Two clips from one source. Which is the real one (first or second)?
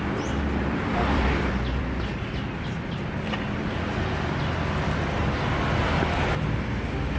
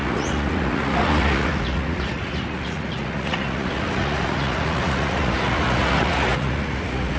first